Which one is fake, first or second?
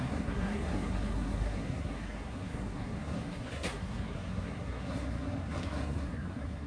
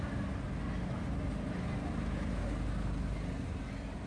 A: first